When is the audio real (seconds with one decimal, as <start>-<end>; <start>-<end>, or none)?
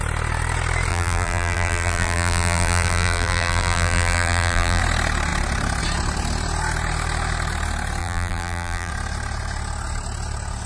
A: 0.0-0.9; 4.8-8.0; 8.9-10.7